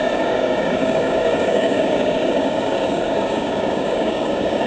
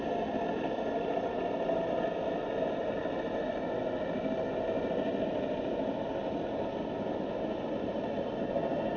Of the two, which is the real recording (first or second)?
second